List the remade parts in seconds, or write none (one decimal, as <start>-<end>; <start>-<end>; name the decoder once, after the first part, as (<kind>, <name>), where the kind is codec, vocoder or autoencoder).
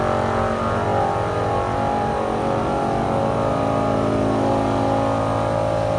none